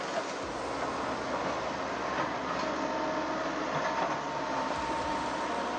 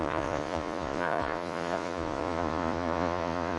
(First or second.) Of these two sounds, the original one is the first